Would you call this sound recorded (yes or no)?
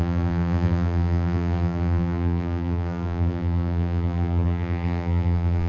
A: no